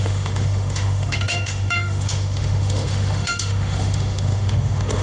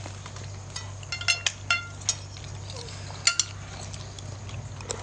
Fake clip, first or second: first